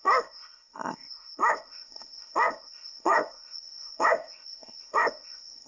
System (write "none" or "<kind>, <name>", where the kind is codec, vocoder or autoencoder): codec, ZipCodec